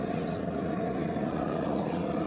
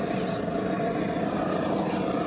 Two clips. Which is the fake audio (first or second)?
first